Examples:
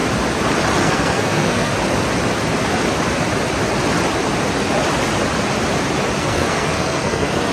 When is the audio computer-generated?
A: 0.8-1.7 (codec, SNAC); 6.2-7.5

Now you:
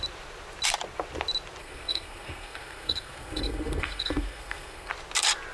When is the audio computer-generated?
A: 1.6-4.9 (codec, SNAC)

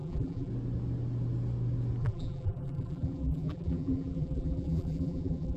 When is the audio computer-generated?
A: 0.0-0.5 (vocoder, BigVGAN v2); 2.0-5.6

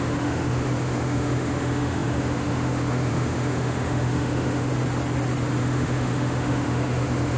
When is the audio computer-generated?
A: 0.0-4.7 (autoencoder, DAC-VAE); 5.6-7.4

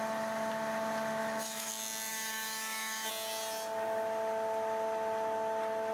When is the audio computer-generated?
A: 1.2-1.7 (autoencoder, DAC-VAE); 2.1-3.1

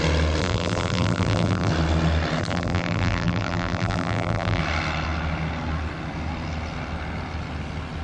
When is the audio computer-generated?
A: 0.4-1.7 (vocoder, BigVGAN v2); 2.4-4.6

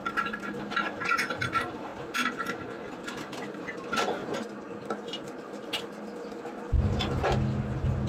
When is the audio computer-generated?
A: 0.0-0.6 (vocoder, BigVGAN v2); 4.2-6.0

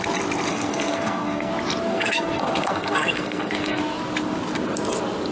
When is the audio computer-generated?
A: 0.5-1.5 (codec, SNAC); 1.9-3.8